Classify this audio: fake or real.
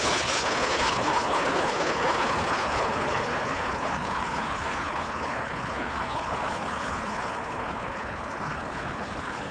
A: fake